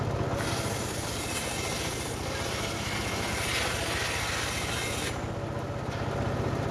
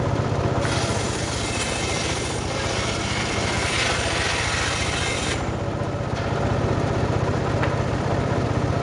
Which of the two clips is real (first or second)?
first